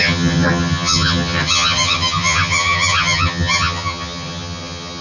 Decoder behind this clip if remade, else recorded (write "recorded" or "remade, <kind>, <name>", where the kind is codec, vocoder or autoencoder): remade, vocoder, HiFi-GAN